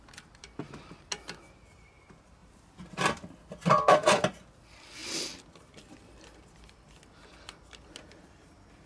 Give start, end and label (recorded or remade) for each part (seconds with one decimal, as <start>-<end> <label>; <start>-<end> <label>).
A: 0.0-8.9 recorded